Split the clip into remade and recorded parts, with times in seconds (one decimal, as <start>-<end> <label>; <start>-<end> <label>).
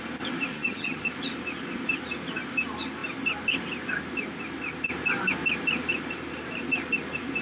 0.0-0.5 recorded; 0.5-1.1 remade; 1.1-7.4 recorded